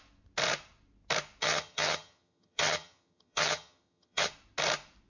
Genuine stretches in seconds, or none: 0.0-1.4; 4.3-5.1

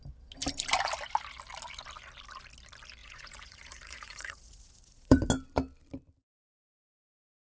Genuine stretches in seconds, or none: 0.0-3.0; 5.3-7.4